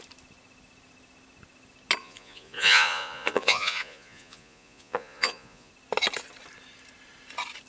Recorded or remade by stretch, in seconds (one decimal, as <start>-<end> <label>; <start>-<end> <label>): 0.0-2.0 recorded; 2.0-5.7 remade; 5.7-7.7 recorded